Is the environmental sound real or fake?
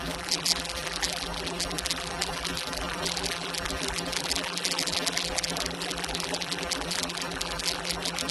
fake